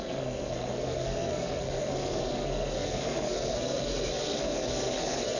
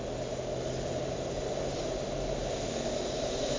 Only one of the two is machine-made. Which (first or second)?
first